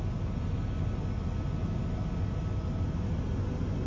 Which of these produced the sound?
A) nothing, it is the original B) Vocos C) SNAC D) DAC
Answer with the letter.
A